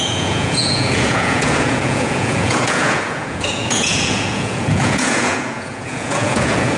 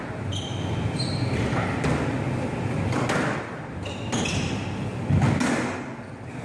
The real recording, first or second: second